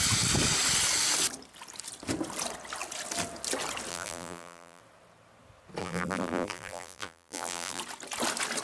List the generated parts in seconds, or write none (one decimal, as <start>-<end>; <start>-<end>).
3.9-4.8; 5.8-7.8